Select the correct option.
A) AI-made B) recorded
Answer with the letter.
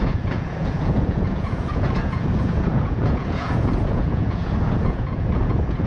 A